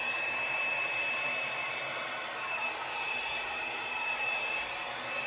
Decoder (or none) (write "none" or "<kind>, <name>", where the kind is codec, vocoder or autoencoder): vocoder, BigVGAN v2